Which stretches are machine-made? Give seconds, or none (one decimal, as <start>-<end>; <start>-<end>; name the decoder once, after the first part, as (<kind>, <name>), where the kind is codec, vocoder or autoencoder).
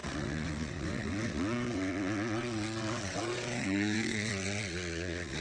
0.0-5.4 (vocoder, WaveNeXt)